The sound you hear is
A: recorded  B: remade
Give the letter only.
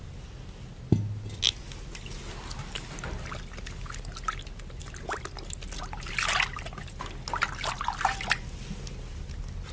A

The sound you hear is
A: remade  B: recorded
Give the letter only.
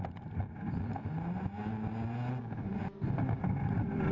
B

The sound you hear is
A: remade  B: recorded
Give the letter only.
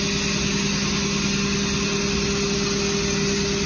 B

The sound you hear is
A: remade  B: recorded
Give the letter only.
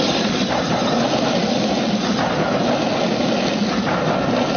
B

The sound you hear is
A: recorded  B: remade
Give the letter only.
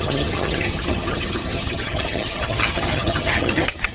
B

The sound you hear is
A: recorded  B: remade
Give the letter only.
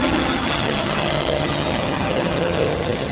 B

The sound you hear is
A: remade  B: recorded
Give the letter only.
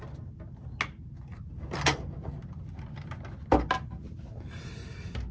B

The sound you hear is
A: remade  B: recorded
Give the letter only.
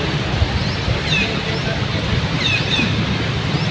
B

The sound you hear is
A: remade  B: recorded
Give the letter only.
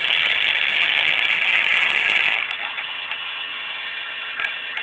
A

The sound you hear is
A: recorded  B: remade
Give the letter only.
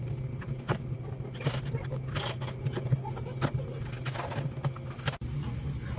A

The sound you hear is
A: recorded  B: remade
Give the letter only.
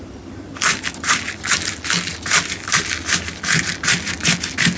A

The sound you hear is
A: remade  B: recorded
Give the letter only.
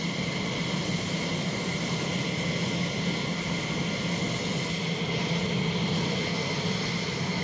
B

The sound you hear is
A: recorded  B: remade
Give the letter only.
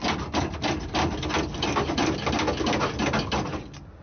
A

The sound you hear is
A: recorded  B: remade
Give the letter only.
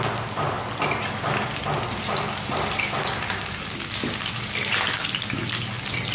A